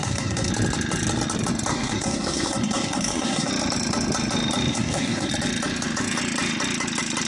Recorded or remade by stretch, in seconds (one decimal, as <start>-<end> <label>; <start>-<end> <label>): 0.0-0.5 remade; 0.5-1.7 recorded; 1.7-3.5 remade; 3.5-4.7 recorded; 4.7-5.3 remade; 5.3-7.3 recorded